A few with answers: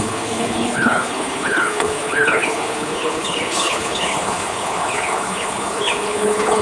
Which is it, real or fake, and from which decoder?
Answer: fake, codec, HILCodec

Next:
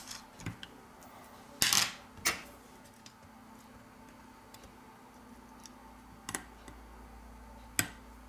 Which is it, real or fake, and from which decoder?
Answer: real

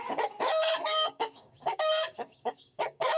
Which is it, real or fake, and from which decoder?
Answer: fake, codec, DAC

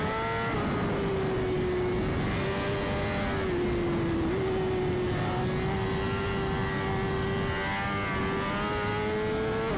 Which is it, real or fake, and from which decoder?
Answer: real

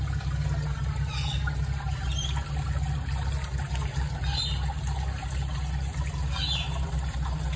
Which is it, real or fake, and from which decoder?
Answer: real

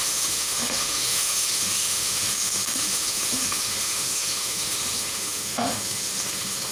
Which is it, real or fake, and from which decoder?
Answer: fake, autoencoder, DAC-VAE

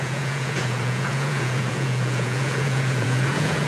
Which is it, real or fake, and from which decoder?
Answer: fake, vocoder, Vocos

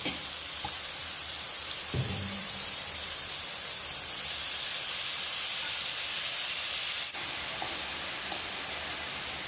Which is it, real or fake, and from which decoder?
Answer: fake, vocoder, BigVGAN v2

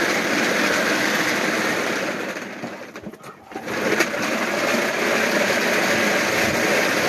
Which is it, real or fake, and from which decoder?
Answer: real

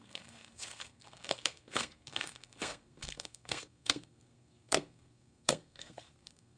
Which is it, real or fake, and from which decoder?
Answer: fake, codec, SNAC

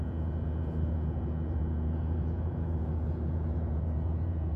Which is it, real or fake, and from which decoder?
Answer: fake, vocoder, Vocos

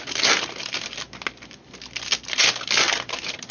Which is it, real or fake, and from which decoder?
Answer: real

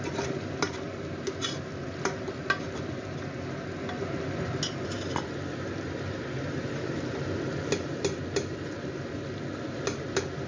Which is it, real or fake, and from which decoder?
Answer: real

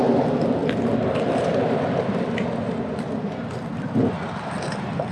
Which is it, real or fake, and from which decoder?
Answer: real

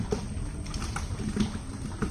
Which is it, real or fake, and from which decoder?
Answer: real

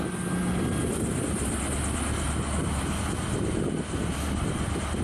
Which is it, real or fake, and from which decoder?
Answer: real